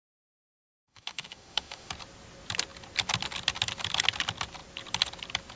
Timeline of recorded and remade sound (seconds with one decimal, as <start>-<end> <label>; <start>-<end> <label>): 0.0-0.7 recorded; 0.7-1.9 remade; 1.9-5.6 recorded